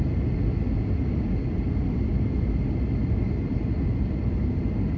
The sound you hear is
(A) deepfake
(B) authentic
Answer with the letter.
B